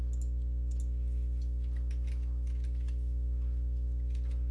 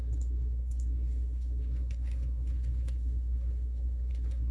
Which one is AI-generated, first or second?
second